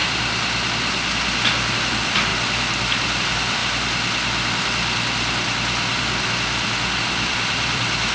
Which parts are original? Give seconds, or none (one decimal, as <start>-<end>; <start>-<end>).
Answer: 0.0-1.7; 2.3-3.2; 3.6-7.0